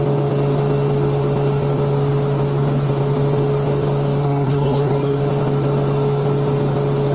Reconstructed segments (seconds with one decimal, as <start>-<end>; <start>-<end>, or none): 4.2-5.2